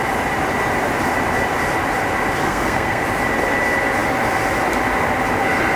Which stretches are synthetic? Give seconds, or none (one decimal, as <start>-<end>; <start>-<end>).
2.4-3.0